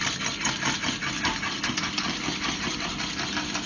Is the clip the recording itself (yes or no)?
yes